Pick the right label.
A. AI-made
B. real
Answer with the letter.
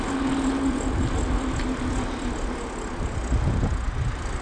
B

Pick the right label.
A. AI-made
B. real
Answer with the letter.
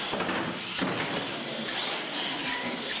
B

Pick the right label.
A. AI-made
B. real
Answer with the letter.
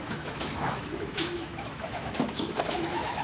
A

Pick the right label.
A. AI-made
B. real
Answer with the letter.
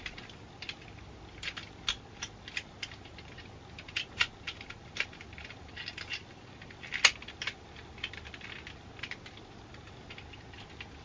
B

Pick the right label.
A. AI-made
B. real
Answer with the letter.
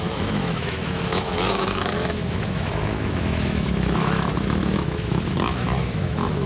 A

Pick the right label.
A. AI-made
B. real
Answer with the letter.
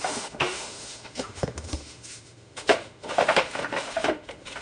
A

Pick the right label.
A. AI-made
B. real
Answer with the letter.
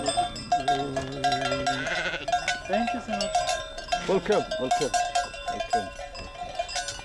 B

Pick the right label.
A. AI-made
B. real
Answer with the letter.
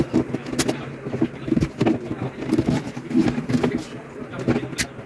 B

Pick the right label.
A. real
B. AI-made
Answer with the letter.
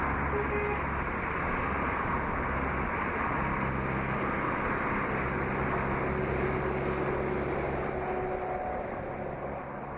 A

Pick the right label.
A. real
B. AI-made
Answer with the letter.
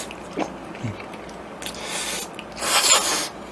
A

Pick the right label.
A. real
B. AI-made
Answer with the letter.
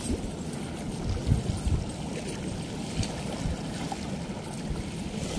A